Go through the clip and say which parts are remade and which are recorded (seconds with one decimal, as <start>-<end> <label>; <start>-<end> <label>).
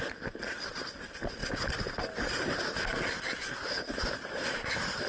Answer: 0.0-1.4 recorded; 1.4-2.6 remade; 2.6-5.1 recorded